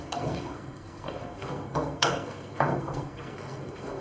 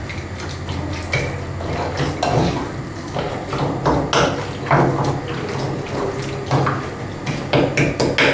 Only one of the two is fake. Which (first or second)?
first